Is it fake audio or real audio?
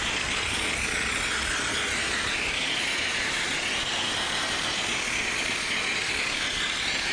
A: real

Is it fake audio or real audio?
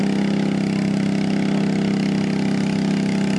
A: real